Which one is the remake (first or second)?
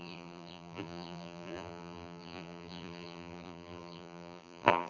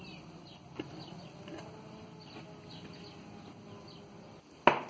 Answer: first